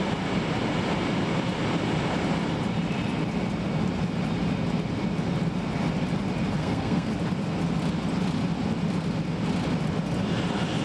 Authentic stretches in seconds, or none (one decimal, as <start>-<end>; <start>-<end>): 0.0-6.6; 7.1-10.8